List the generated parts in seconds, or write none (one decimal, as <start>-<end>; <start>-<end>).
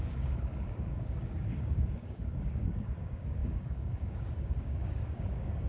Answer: 0.0-5.7